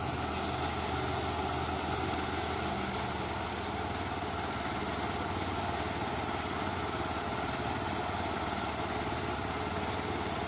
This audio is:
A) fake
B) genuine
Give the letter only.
B